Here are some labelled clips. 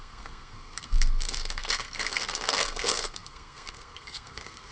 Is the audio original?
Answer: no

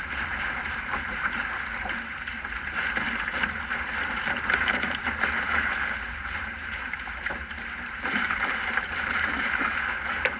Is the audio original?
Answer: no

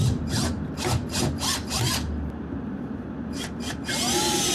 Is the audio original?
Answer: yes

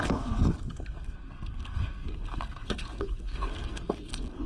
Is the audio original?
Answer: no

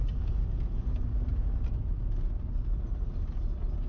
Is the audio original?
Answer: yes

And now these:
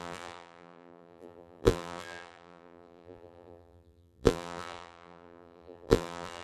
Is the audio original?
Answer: no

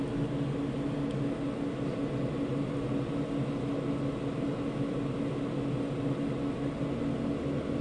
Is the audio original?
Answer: yes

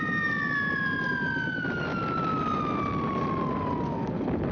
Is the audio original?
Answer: yes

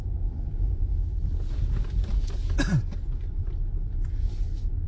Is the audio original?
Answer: yes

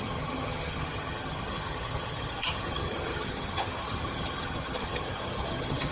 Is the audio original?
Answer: no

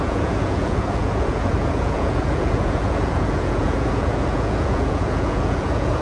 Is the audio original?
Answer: no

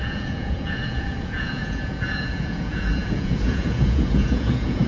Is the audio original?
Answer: no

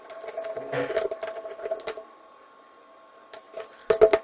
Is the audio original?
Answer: yes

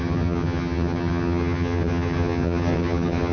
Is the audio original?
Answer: no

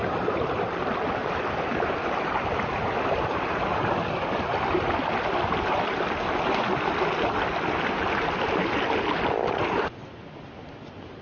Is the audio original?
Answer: yes